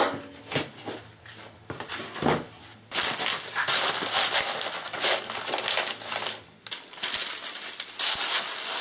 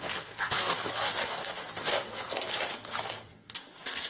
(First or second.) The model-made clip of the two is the second